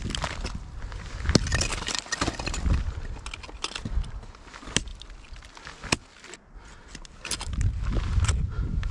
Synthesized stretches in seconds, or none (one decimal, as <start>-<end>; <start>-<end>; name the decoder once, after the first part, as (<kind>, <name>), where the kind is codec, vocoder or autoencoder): 1.5-2.8 (vocoder, BigVGAN v2)